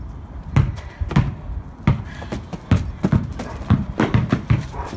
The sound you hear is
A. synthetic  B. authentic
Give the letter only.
B